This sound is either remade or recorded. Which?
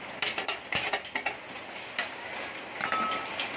recorded